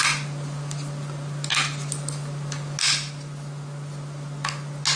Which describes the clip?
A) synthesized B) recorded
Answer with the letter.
B